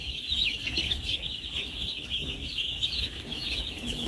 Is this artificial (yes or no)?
yes